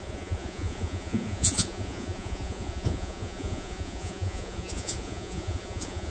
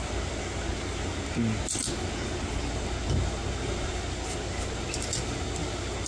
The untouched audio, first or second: second